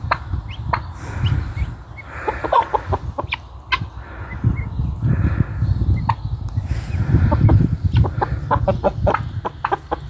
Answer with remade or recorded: recorded